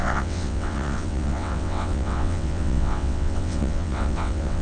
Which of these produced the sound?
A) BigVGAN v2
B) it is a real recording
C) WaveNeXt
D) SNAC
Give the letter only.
C